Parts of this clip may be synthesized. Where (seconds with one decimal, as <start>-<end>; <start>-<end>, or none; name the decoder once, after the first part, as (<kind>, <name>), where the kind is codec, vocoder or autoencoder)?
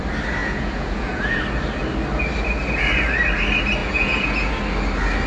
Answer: 0.4-1.4 (vocoder, Vocos); 3.8-4.5